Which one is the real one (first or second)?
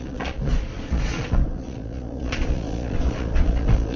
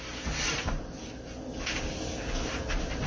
second